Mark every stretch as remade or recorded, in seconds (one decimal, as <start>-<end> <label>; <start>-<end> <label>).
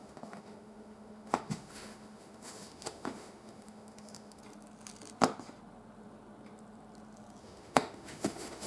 0.0-4.4 remade; 4.4-7.4 recorded; 7.4-8.7 remade